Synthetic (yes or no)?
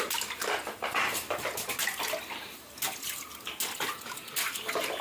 no